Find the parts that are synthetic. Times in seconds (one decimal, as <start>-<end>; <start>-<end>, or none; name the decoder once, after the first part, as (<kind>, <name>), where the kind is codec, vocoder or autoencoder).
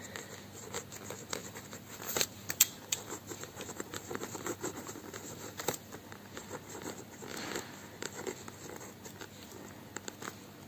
1.4-5.9 (vocoder, BigVGAN v2)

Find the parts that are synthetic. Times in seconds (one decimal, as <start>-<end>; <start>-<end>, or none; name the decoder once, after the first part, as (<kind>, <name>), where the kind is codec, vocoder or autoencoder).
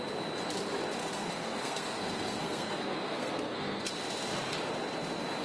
1.0-3.9 (codec, SNAC)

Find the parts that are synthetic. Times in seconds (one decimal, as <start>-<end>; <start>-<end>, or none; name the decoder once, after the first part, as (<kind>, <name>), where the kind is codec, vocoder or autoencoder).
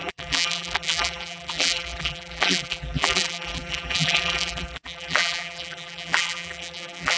0.0-7.2 (vocoder, BigVGAN v2)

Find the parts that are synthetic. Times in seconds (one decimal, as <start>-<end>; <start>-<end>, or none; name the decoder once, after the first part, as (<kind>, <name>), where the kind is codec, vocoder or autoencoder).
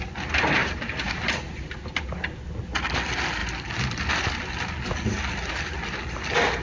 none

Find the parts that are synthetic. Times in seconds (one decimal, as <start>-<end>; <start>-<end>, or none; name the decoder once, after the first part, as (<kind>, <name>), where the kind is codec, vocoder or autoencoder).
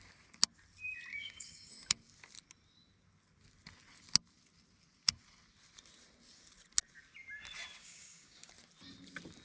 1.1-1.7 (codec, DAC); 7.8-8.5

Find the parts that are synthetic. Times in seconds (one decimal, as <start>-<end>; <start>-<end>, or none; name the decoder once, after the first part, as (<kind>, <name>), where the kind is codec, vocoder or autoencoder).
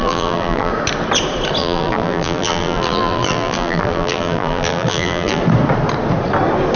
0.0-0.7 (vocoder, BigVGAN v2); 1.6-5.4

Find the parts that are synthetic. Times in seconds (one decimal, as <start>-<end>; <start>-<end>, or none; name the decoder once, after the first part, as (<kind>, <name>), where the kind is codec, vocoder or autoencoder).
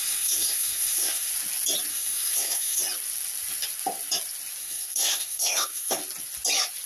0.0-1.3 (codec, SNAC); 1.9-2.8; 4.6-6.0